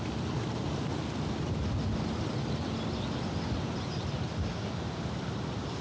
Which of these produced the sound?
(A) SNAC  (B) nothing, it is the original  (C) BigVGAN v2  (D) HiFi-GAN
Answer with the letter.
B